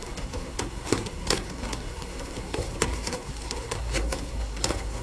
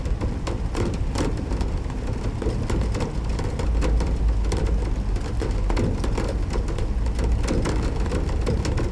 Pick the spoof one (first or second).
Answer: first